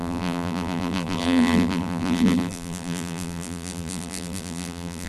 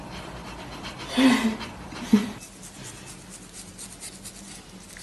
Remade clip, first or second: first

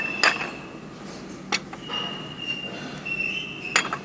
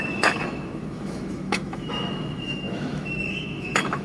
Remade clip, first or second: second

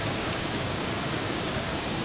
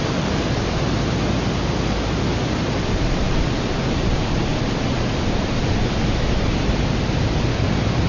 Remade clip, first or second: first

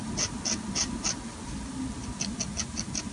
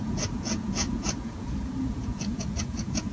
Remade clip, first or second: second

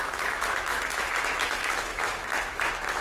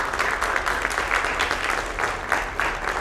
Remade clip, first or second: first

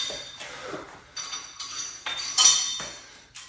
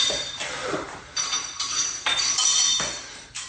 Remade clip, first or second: second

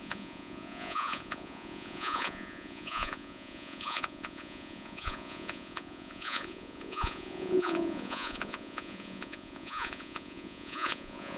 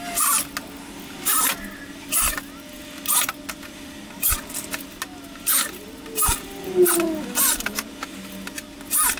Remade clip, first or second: first